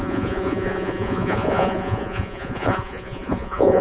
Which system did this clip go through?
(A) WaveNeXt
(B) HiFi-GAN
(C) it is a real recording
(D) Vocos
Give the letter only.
D